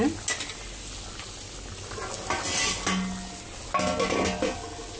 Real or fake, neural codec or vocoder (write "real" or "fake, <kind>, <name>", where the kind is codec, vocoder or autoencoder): real